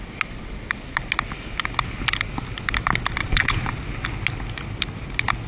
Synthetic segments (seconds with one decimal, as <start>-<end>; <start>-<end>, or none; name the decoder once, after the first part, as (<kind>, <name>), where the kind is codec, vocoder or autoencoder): 3.2-3.7 (vocoder, Vocos)